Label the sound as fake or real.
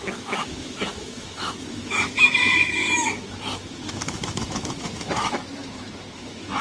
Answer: fake